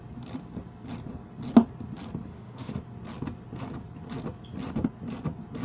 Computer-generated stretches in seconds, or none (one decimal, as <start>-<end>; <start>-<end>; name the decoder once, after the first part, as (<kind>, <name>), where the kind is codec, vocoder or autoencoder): 2.3-2.8 (autoencoder, DAC-VAE)